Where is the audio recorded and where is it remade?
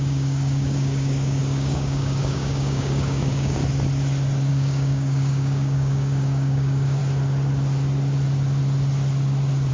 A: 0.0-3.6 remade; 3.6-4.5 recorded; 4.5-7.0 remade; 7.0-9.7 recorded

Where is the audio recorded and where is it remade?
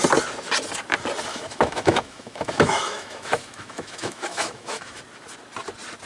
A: 0.0-1.3 recorded; 1.3-5.0 remade; 5.0-6.1 recorded